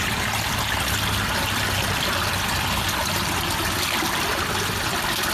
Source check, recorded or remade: recorded